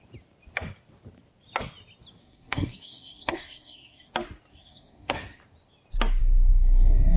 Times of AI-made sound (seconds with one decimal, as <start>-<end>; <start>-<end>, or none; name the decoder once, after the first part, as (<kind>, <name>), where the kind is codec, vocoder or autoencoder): 2.2-4.1 (codec, SNAC); 4.5-5.4; 6.2-7.2